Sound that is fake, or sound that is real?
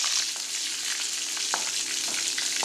real